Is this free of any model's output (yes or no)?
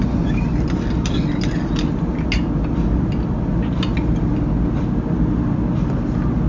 yes